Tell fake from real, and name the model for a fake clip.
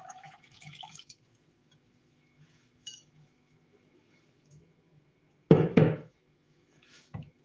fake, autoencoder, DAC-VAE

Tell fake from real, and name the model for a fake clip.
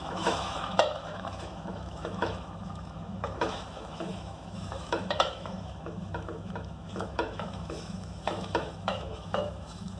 fake, autoencoder, DAC-VAE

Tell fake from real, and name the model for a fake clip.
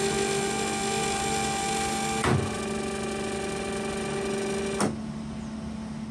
real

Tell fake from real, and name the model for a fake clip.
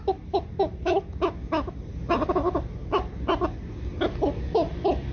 real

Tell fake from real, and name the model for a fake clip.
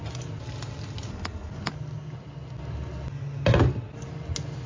real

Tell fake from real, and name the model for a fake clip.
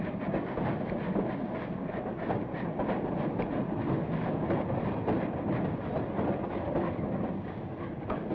real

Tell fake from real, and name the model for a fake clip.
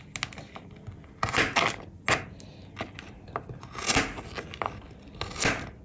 real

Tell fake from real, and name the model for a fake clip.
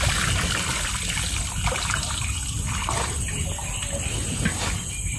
real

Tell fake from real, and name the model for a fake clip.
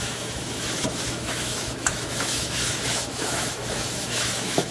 fake, autoencoder, DAC-VAE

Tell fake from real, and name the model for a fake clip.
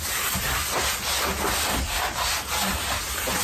real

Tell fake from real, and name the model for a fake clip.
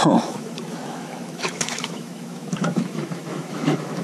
fake, autoencoder, DAC-VAE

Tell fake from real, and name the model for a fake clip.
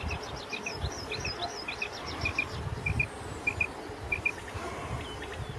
real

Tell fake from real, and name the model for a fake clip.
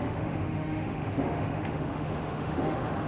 fake, autoencoder, DAC-VAE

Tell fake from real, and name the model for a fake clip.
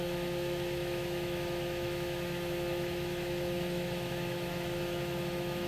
fake, autoencoder, DAC-VAE